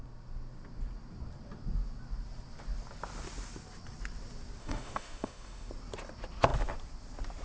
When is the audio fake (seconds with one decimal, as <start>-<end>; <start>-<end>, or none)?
4.6-5.7